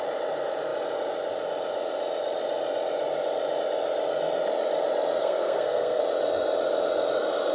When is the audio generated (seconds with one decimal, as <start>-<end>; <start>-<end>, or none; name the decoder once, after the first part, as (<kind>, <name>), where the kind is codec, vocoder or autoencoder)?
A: 5.2-6.0 (codec, SNAC)